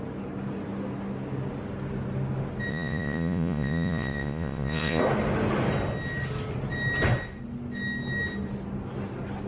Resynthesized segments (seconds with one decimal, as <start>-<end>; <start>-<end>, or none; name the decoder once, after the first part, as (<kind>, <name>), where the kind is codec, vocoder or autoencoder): 2.7-5.0 (vocoder, Vocos)

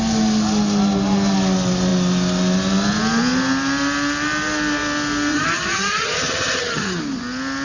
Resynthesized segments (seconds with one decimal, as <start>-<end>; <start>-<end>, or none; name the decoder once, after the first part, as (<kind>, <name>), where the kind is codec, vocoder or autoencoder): 5.3-7.0 (vocoder, HiFi-GAN)

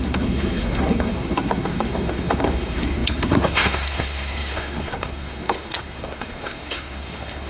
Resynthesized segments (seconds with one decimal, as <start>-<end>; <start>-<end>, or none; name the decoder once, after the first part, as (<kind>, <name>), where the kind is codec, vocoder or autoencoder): 0.0-7.5 (codec, SNAC)

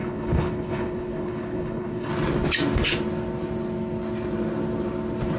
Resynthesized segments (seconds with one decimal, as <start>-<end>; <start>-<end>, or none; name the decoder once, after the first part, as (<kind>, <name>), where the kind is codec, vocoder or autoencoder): 0.0-2.1 (codec, HILCodec)

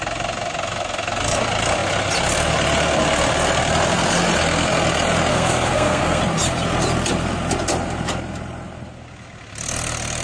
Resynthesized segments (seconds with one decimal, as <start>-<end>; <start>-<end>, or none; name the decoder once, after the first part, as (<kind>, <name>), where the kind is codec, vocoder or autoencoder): 5.3-6.2 (codec, SNAC)

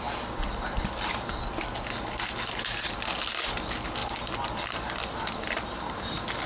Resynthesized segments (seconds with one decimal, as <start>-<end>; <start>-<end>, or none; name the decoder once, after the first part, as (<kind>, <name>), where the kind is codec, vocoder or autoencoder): 4.0-6.5 (vocoder, BigVGAN v2)

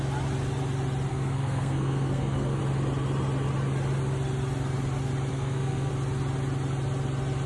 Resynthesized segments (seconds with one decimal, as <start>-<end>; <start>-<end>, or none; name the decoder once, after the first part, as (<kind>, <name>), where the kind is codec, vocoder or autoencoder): 1.1-2.6 (codec, SNAC); 5.3-5.9